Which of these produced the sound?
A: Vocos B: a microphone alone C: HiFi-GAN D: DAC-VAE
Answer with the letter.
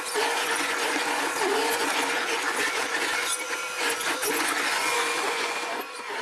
A